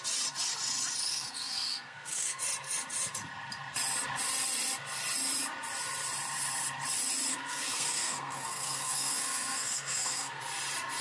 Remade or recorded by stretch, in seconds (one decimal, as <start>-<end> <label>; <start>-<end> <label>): 0.0-1.1 recorded; 1.1-2.4 remade; 2.4-7.3 recorded; 7.3-10.4 remade; 10.4-11.0 recorded